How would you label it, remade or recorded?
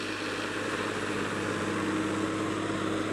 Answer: recorded